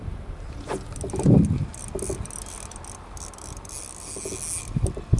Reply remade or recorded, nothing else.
recorded